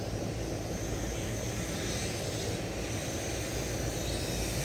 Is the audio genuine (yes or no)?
yes